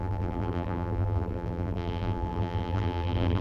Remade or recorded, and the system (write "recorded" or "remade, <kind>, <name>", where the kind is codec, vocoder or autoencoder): remade, vocoder, BigVGAN v2